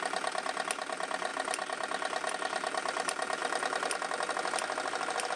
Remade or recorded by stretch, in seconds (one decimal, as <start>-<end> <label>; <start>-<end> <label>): 0.0-5.4 recorded